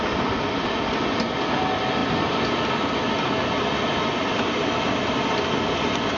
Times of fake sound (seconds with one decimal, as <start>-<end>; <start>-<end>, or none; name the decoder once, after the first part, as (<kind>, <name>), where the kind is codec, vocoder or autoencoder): none